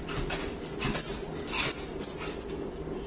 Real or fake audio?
real